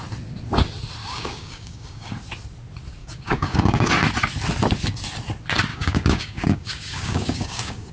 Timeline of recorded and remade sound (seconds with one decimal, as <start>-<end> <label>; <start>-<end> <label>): 0.0-1.0 recorded; 1.0-2.1 remade; 2.1-3.0 recorded; 3.0-3.9 remade; 3.9-5.7 recorded; 5.7-7.9 remade